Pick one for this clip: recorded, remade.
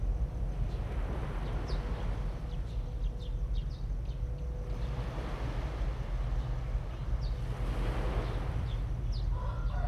recorded